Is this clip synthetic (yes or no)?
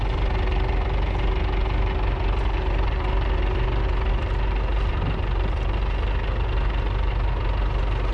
no